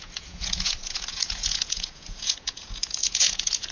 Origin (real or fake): fake